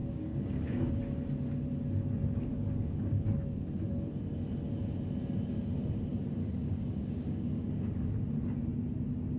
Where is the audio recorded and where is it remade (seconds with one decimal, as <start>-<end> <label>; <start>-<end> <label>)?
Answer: 0.0-0.9 remade; 0.9-2.5 recorded; 2.5-3.2 remade; 3.2-6.4 recorded; 6.4-7.7 remade; 7.7-9.4 recorded